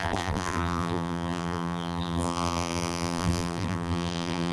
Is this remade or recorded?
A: remade